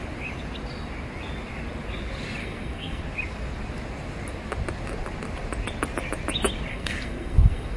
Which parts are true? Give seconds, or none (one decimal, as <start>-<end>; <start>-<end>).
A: 0.0-2.4; 3.0-6.7